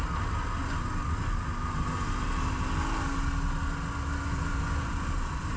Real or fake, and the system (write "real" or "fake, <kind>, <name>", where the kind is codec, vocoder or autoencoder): real